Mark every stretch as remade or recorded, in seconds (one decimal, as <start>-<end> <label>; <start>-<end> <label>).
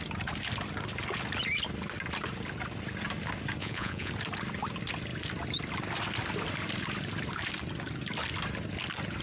0.0-3.6 recorded; 3.6-4.1 remade; 4.1-9.2 recorded